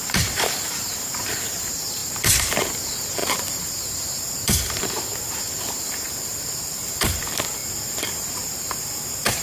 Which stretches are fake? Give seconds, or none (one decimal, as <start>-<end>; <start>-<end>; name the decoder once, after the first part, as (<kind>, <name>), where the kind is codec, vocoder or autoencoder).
0.0-9.4 (vocoder, BigVGAN v2)